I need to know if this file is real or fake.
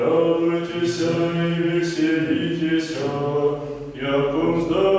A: real